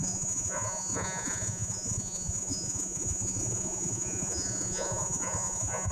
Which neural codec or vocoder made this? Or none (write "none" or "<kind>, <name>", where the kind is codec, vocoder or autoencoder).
vocoder, Vocos